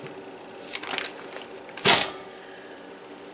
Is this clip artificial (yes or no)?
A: no